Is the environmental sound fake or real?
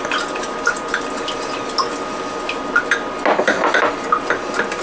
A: real